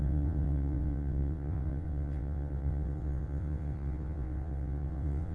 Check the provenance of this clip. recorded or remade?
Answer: remade